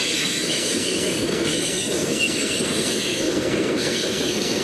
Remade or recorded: remade